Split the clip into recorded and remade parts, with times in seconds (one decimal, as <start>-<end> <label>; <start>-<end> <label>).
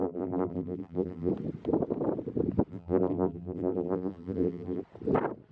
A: 0.0-1.3 remade; 1.3-2.7 recorded; 2.7-4.8 remade; 4.8-5.5 recorded